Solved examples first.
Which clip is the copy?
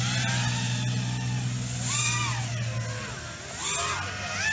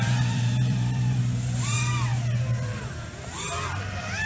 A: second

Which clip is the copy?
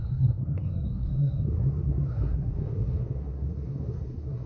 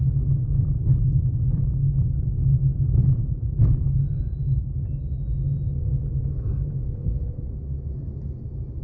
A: first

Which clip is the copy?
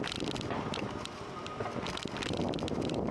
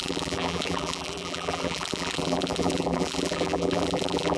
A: second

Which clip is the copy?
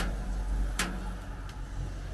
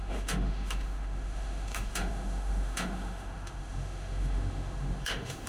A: second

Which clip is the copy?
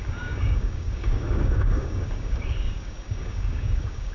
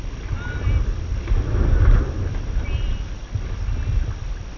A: first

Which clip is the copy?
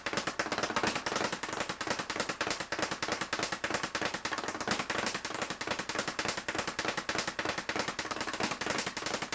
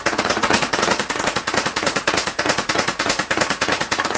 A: second